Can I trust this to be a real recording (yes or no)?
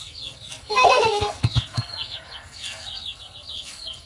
no